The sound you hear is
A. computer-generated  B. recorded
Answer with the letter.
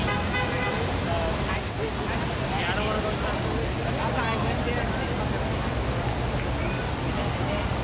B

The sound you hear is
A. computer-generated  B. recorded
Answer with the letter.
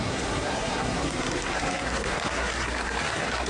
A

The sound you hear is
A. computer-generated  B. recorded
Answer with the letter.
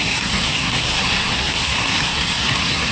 A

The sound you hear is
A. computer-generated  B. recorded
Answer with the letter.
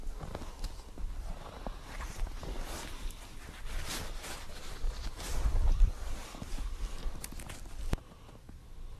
B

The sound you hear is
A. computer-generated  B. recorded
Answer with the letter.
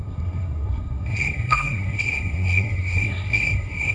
A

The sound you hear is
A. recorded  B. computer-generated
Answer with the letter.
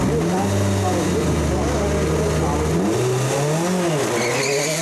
A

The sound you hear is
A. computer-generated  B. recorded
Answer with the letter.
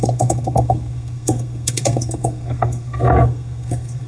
A